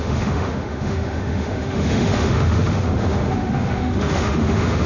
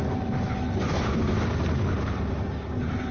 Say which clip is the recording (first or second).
second